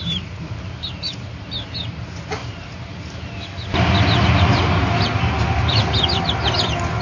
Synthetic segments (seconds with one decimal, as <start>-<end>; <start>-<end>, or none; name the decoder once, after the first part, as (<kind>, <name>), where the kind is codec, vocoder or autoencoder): 0.0-2.0 (vocoder, BigVGAN v2); 2.4-3.2